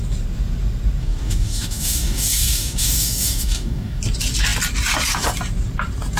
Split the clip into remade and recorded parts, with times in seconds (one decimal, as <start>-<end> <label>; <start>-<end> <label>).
0.0-1.0 recorded; 1.0-4.0 remade; 4.0-6.2 recorded